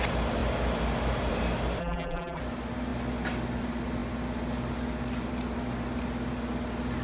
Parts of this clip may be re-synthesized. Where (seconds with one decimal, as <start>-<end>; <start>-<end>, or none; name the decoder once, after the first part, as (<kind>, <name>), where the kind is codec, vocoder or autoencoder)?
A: 1.8-2.4 (vocoder, BigVGAN v2)